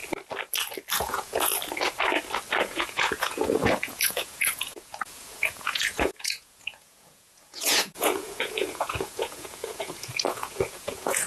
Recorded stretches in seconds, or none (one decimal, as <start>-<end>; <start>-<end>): 0.0-0.9; 1.5-2.6